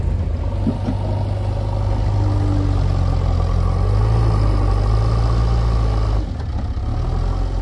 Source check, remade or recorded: recorded